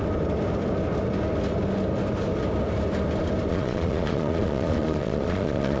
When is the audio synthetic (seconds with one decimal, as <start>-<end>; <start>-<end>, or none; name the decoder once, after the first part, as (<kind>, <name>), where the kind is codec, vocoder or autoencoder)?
3.5-5.8 (vocoder, Vocos)